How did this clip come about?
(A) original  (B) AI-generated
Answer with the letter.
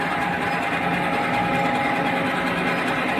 A